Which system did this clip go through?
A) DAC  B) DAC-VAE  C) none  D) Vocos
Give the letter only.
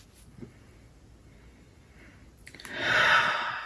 C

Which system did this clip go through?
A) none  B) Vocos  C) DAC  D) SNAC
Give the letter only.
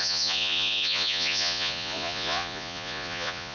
B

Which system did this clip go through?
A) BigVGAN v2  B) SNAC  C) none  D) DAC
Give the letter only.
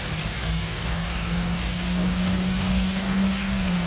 D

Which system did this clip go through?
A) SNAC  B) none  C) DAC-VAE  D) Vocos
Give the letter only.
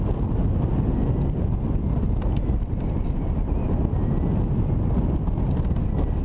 B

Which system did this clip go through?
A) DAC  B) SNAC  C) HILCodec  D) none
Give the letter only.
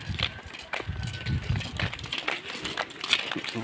D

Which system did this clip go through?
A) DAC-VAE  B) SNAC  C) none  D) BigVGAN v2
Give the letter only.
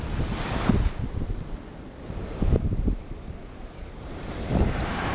D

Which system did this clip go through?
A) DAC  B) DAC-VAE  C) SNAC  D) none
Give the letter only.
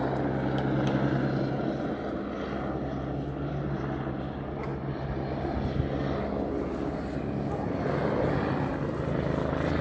D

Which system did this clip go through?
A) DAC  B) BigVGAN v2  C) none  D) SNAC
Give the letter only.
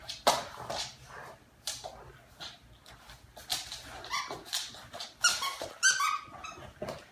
C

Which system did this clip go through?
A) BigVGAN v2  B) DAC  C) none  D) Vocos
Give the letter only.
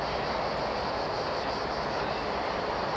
A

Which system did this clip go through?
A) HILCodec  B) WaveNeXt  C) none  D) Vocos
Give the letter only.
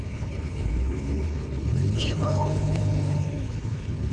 A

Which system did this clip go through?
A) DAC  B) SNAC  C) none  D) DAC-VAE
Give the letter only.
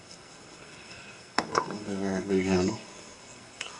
B